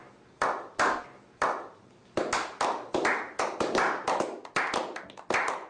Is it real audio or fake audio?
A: real